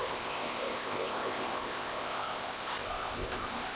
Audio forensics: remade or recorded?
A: remade